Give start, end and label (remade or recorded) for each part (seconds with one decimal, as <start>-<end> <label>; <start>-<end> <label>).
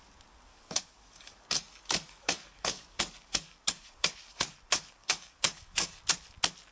0.0-0.5 recorded; 0.5-4.5 remade; 4.5-5.0 recorded; 5.0-6.0 remade; 6.0-6.7 recorded